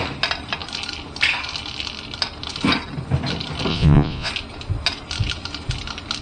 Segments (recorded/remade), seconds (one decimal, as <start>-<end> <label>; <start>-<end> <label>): 0.0-3.7 recorded; 3.7-4.3 remade; 4.3-6.2 recorded